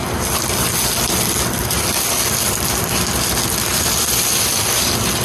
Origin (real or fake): real